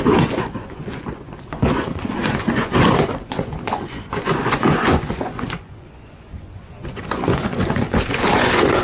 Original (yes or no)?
no